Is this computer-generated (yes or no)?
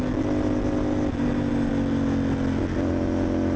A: no